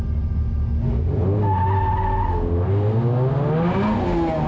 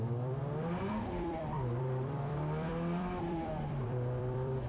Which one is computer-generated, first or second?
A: second